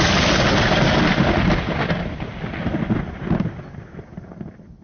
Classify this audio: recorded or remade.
recorded